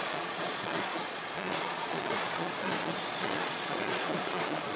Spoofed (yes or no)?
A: yes